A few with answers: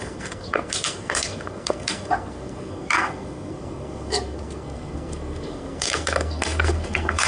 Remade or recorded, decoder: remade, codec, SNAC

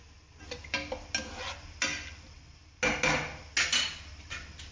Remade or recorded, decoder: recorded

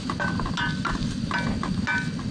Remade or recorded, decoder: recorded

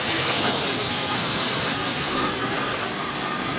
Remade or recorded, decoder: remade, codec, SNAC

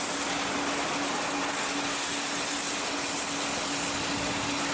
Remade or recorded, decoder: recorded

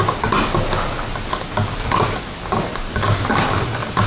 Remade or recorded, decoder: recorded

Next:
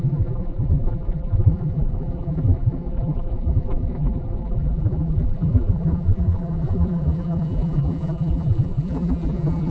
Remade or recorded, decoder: remade, vocoder, BigVGAN v2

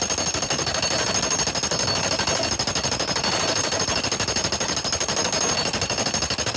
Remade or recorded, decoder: recorded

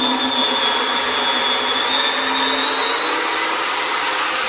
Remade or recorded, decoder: recorded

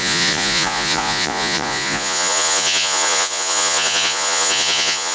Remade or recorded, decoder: remade, vocoder, Vocos